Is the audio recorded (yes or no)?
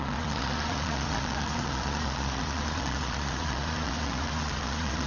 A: no